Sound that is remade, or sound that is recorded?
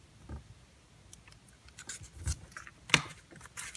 recorded